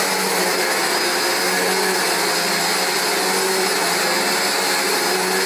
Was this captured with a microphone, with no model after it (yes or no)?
yes